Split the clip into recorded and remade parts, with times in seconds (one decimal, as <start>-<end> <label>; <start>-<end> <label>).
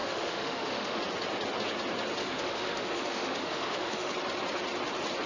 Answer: 0.0-1.0 remade; 1.0-2.2 recorded; 2.2-4.1 remade; 4.1-5.3 recorded